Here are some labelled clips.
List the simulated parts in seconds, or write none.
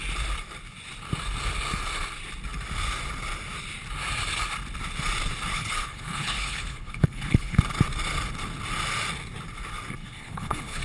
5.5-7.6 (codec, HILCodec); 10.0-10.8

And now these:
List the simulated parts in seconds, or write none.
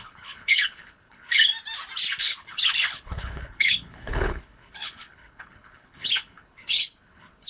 0.0-1.5 (codec, HILCodec); 2.2-7.5